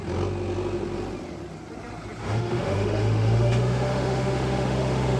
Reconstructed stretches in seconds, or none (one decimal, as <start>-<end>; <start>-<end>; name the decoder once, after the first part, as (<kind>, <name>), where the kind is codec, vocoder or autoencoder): 2.2-5.2 (autoencoder, DAC-VAE)